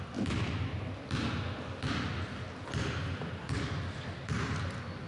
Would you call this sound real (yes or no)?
yes